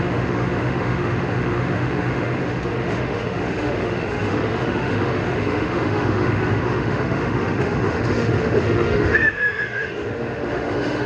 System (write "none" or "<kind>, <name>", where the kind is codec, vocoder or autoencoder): autoencoder, DAC-VAE